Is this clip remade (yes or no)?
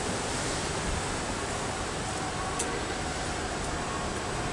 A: no